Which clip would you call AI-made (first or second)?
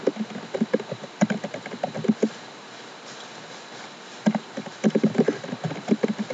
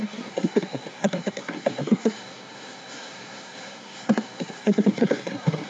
second